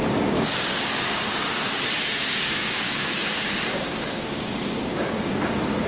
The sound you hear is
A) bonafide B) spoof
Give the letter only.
B